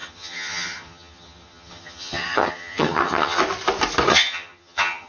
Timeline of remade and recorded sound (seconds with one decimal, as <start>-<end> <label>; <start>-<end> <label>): 0.0-3.4 remade; 3.4-4.1 recorded; 4.1-5.1 remade

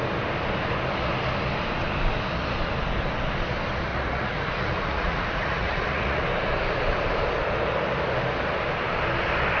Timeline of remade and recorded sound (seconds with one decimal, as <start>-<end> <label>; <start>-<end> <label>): 0.0-3.9 recorded; 3.9-6.2 remade; 6.2-9.6 recorded

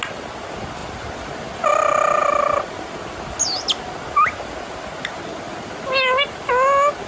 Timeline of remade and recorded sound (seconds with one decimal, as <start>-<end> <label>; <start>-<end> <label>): 0.0-7.1 recorded